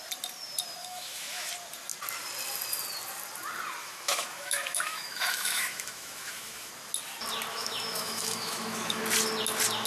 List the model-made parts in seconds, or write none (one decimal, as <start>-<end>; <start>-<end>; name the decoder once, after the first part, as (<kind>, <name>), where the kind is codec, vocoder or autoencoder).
0.8-1.5 (autoencoder, DAC-VAE); 3.8-6.7; 7.5-9.0